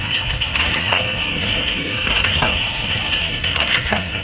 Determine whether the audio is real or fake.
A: fake